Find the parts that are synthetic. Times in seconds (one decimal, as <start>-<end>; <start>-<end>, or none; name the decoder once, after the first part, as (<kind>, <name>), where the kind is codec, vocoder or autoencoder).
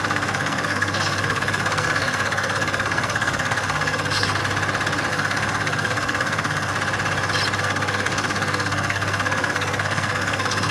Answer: 0.0-4.4 (codec, SNAC); 5.1-6.7; 7.6-10.7